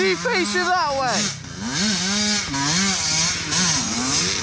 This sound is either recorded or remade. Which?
recorded